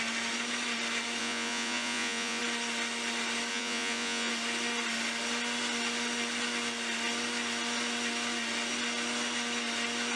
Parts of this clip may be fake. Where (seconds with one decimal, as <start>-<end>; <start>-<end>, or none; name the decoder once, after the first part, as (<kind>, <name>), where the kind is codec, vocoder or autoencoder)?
1.2-2.4 (vocoder, Vocos); 3.5-4.3